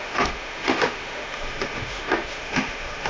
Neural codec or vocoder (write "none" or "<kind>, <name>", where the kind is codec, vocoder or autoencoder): autoencoder, DAC-VAE